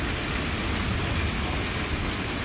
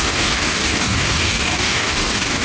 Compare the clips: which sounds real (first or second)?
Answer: first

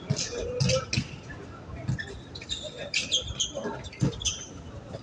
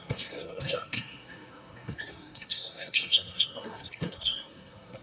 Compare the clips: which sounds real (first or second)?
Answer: first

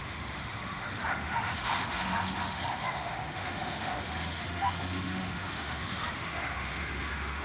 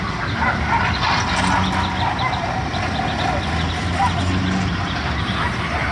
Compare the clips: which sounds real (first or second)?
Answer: second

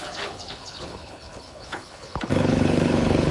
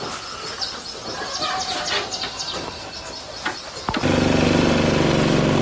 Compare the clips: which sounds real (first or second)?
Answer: second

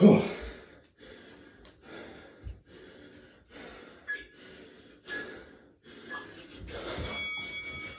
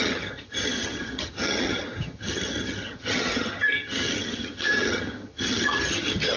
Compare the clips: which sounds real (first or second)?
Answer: first